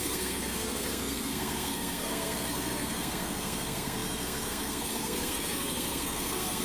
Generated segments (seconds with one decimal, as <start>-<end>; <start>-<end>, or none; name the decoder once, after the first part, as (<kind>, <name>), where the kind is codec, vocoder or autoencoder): 0.0-6.6 (codec, SNAC)